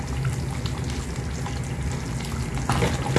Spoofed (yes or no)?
no